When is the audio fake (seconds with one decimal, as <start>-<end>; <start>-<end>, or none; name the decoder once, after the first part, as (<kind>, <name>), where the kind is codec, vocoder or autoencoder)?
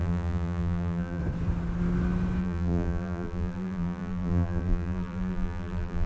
0.0-1.2 (vocoder, BigVGAN v2); 2.4-6.1